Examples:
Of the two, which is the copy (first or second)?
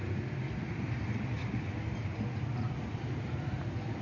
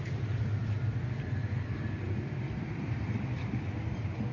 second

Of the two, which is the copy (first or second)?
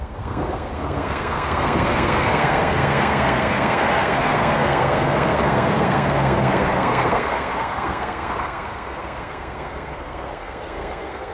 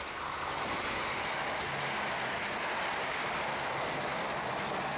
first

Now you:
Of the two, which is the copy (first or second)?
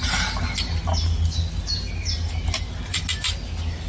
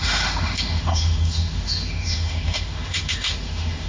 second